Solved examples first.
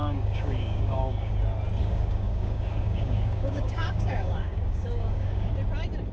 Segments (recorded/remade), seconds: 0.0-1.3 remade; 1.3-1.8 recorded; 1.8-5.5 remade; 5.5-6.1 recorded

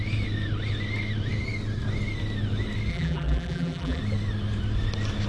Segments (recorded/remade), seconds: 0.0-2.9 recorded; 2.9-4.0 remade; 4.0-5.3 recorded

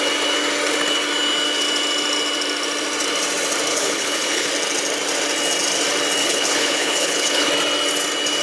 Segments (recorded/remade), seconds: 0.0-3.7 recorded; 3.7-4.5 remade; 4.5-6.2 recorded; 6.2-7.5 remade; 7.5-8.4 recorded